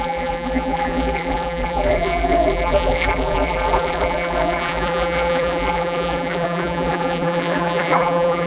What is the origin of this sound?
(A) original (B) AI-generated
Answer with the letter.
B